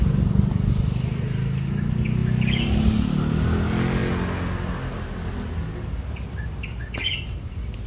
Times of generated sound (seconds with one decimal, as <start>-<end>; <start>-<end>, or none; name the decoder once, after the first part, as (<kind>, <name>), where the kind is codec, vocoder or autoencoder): none